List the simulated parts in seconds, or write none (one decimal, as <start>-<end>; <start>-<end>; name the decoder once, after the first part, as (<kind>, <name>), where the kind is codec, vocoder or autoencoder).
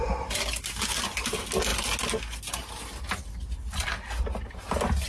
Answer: none